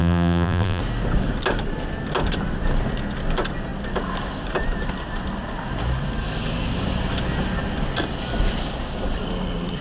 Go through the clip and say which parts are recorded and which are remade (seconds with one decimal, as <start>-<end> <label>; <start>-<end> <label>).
0.0-0.8 remade; 0.8-9.8 recorded